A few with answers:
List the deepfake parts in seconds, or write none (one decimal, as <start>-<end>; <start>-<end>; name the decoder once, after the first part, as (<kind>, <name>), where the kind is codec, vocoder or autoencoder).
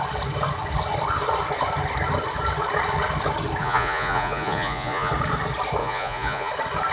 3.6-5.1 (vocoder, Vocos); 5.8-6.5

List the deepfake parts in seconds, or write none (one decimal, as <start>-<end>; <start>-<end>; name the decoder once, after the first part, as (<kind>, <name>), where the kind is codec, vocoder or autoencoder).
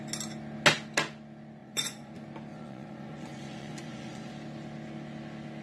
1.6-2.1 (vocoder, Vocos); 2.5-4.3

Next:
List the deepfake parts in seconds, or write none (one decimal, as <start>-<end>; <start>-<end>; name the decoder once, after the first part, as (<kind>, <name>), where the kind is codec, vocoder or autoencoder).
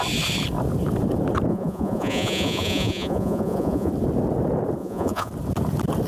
1.5-3.9 (vocoder, Vocos); 4.8-5.3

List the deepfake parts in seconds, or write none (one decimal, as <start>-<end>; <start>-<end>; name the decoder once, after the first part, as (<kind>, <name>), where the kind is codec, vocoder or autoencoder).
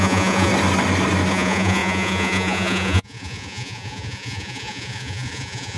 0.0-0.5 (vocoder, Vocos); 1.3-5.8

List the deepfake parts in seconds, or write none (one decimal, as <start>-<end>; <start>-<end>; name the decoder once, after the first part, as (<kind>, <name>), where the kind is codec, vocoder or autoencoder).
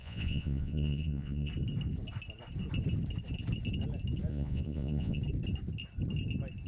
0.0-1.5 (vocoder, Vocos); 4.3-5.2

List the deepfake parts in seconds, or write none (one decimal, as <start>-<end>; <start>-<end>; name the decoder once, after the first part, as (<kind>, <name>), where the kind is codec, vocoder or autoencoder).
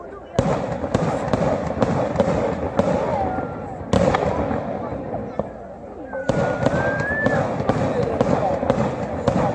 none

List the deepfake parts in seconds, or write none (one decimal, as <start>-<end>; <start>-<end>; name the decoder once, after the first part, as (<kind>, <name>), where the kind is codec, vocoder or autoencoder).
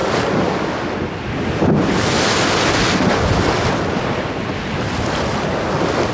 none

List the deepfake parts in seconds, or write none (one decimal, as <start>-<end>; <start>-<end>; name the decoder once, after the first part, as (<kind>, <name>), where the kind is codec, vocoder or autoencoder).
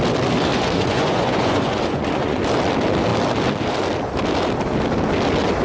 0.5-2.4 (vocoder, Vocos)